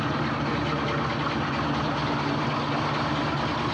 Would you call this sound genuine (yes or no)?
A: yes